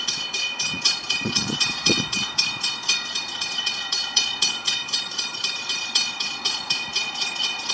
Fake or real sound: fake